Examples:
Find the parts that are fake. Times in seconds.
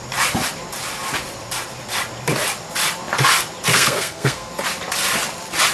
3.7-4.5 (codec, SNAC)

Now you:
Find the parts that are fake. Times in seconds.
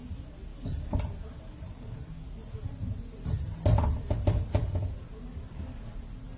4.6-5.2 (vocoder, Vocos)